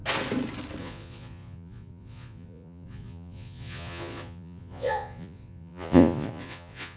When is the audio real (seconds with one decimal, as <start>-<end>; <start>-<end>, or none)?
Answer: 0.0-0.8